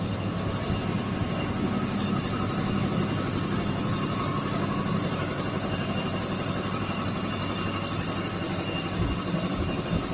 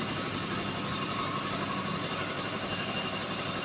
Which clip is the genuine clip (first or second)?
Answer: first